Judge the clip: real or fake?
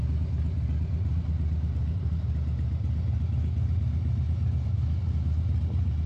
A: real